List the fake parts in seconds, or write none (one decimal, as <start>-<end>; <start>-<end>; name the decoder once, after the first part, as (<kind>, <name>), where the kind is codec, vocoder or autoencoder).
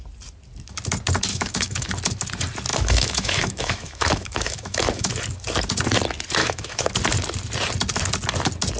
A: 1.3-1.9 (autoencoder, DAC-VAE); 2.7-5.1; 6.4-6.9